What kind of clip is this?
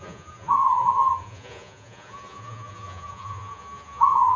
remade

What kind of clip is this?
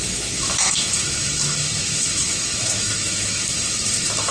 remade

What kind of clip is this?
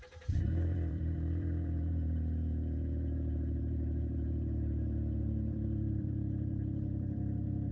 remade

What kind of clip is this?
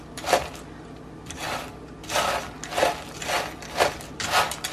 recorded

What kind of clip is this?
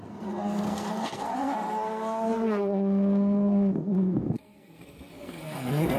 remade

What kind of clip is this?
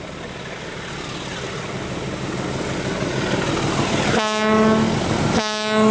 recorded